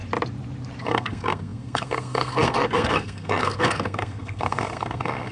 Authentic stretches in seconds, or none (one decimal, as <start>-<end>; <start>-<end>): 0.0-0.8